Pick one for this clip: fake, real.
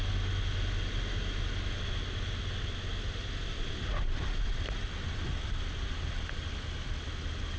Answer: real